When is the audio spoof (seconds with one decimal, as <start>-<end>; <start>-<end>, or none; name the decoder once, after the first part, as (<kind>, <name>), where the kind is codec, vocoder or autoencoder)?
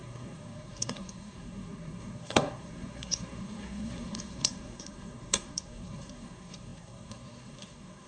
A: 0.0-8.1 (codec, SNAC)